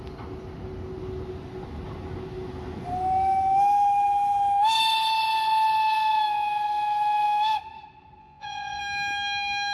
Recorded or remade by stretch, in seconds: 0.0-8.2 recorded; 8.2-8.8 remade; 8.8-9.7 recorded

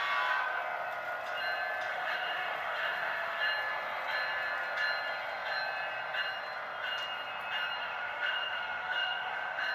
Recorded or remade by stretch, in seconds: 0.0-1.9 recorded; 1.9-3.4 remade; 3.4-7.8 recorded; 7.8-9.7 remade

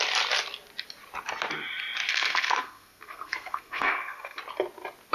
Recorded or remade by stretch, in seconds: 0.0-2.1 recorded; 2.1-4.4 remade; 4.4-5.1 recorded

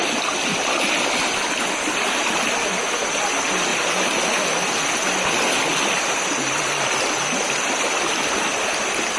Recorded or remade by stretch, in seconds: 0.0-9.2 recorded

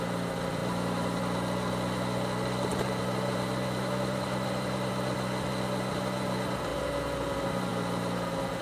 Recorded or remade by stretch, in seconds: 0.0-0.6 recorded; 0.6-1.2 remade; 1.2-2.7 recorded; 2.7-4.9 remade; 4.9-8.6 recorded

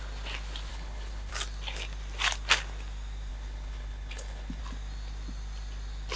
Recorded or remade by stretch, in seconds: 0.0-0.7 recorded; 0.7-1.3 remade; 1.3-3.3 recorded; 3.3-4.6 remade; 4.6-6.2 recorded